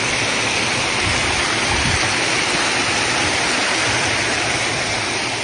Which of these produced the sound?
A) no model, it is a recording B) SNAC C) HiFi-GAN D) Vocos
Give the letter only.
A